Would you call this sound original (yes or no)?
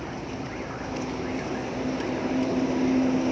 yes